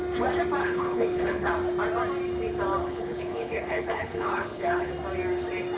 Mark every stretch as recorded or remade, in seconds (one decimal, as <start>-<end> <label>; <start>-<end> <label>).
0.0-0.6 recorded; 0.6-1.5 remade; 1.5-2.8 recorded; 2.8-4.9 remade; 4.9-5.8 recorded